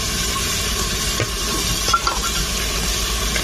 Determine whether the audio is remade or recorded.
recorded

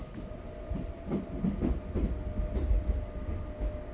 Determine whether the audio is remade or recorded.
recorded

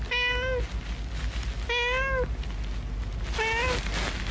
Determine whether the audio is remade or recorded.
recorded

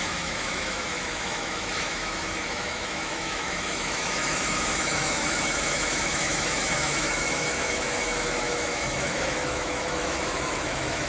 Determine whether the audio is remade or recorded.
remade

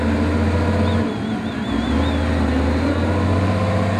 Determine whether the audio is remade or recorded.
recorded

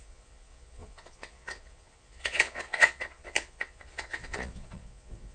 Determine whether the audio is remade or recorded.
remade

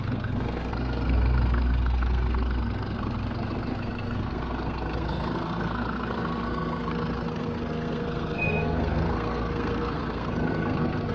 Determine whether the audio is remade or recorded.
remade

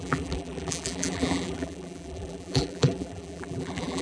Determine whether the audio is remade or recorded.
remade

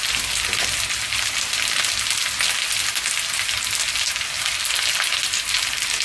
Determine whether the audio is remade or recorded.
recorded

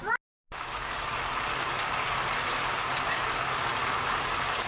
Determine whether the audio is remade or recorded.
recorded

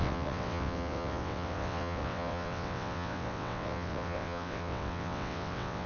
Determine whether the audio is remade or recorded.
remade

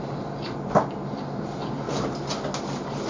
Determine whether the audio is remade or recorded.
recorded